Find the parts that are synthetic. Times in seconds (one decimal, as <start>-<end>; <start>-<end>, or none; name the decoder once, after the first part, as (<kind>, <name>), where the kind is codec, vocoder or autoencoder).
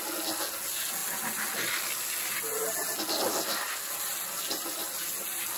none